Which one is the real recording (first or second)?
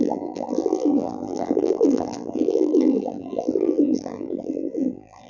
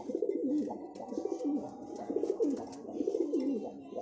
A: second